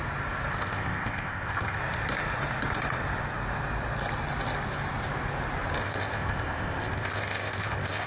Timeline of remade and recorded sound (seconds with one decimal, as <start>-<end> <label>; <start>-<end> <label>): 0.0-0.5 recorded; 0.5-1.8 remade; 1.8-5.8 recorded; 5.8-8.1 remade